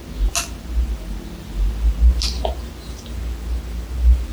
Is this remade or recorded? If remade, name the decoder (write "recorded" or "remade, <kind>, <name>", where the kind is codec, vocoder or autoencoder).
recorded